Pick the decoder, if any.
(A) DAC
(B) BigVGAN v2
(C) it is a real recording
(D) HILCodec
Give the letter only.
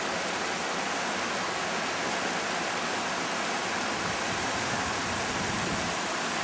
C